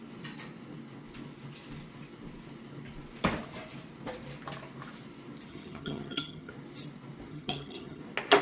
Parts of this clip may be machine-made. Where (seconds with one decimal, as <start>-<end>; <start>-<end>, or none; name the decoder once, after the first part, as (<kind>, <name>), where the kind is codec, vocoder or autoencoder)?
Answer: 5.5-6.5 (vocoder, HiFi-GAN); 7.3-8.0